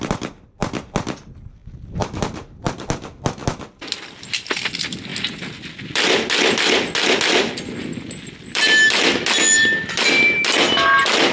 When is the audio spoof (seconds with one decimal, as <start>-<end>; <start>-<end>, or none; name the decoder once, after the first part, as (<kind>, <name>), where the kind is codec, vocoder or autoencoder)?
none